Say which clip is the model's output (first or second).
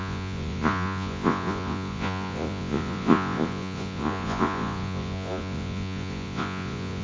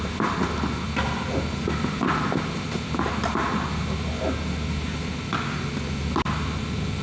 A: first